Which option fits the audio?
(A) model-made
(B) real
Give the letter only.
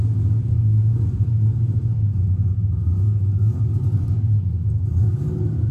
A